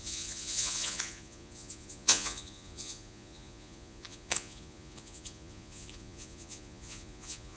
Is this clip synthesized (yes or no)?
yes